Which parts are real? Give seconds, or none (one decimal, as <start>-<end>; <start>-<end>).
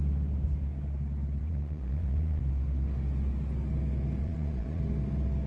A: 0.0-1.4; 2.4-4.2; 4.8-5.5